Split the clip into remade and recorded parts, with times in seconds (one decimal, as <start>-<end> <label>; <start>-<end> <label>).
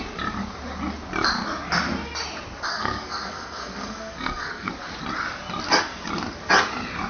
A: 0.0-2.7 recorded; 2.7-4.7 remade; 4.7-7.1 recorded